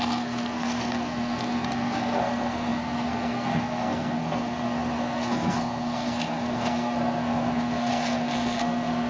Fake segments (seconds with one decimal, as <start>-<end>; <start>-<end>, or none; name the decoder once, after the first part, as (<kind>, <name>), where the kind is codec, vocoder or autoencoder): 0.0-9.1 (codec, SNAC)